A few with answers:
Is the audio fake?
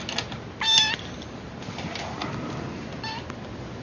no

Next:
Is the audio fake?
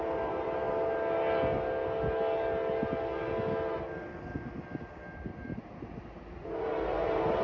no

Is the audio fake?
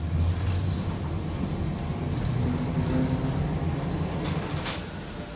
no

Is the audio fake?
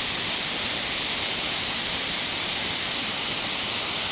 yes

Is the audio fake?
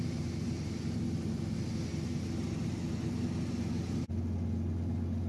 no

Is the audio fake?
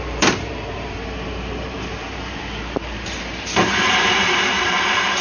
yes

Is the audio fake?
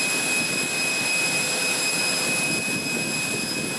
no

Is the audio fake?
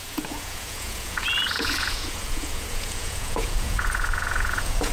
yes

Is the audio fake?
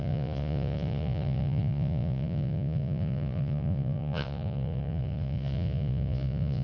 yes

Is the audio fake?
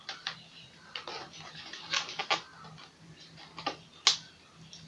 no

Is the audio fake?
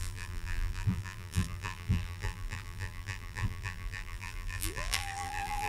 yes